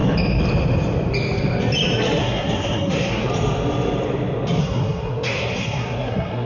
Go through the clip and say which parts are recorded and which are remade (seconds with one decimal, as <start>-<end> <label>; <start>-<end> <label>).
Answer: 0.0-2.2 recorded; 2.2-3.3 remade; 3.3-4.6 recorded; 4.6-6.5 remade